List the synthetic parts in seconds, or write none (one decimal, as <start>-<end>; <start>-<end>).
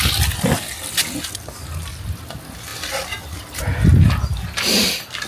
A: none